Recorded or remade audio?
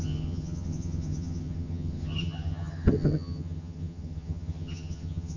remade